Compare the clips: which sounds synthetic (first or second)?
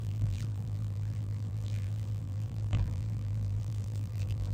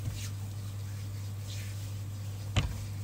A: first